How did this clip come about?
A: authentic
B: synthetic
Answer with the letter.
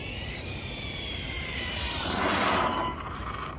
B